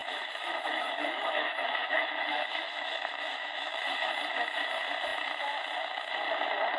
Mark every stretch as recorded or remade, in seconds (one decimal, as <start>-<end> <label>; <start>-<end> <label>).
0.0-4.1 remade; 4.1-6.8 recorded